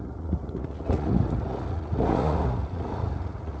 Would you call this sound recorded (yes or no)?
no